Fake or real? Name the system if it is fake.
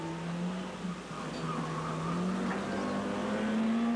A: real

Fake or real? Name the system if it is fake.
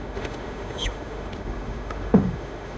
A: fake, autoencoder, DAC-VAE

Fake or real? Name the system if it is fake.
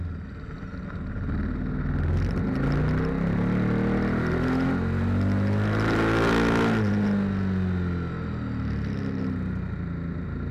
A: real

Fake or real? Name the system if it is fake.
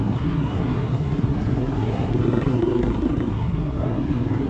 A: fake, codec, SNAC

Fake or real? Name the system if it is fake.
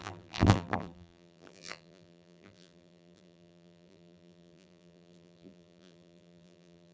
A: fake, vocoder, BigVGAN v2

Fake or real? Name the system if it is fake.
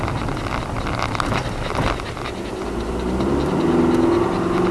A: real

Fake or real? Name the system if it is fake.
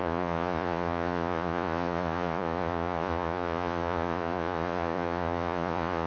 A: fake, vocoder, Vocos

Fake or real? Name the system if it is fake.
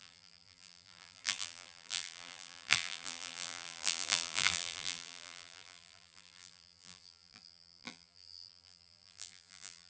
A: fake, vocoder, BigVGAN v2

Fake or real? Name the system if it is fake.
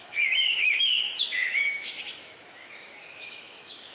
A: fake, autoencoder, DAC-VAE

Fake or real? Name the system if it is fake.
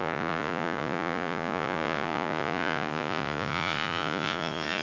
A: fake, vocoder, Vocos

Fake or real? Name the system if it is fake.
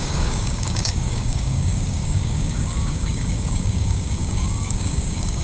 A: fake, codec, DAC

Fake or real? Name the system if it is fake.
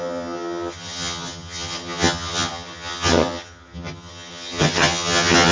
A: fake, vocoder, HiFi-GAN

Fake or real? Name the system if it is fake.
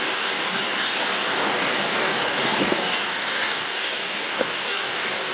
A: fake, codec, DAC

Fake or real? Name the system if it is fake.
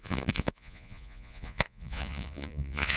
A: fake, vocoder, Vocos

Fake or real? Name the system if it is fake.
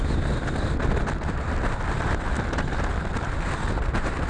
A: real